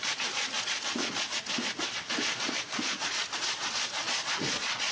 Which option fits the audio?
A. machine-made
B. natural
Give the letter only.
A